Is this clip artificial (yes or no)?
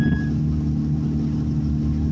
no